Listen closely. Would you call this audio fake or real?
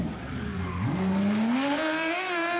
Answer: fake